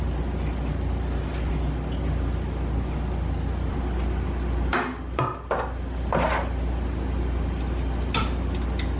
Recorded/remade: recorded